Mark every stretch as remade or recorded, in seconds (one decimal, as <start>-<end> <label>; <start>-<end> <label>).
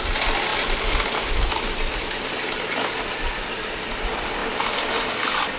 0.0-0.5 recorded; 0.5-3.9 remade; 3.9-5.6 recorded